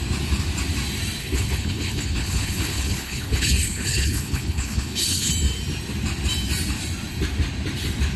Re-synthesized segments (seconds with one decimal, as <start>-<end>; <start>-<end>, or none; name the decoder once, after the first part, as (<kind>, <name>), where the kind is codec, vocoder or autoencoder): 1.2-5.3 (codec, HILCodec)